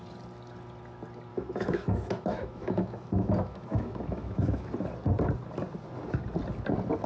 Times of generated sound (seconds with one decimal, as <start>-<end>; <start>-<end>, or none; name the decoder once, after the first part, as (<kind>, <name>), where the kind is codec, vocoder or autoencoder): 1.3-4.7 (autoencoder, DAC-VAE)